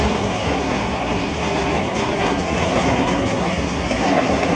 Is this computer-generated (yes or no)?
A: yes